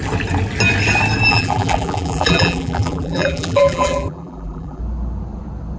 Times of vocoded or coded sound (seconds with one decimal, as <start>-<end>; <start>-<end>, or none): 1.3-4.8